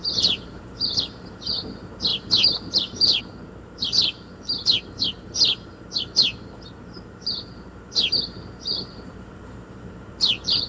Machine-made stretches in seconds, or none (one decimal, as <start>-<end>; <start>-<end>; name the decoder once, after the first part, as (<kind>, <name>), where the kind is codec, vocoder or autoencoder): 0.0-10.7 (vocoder, BigVGAN v2)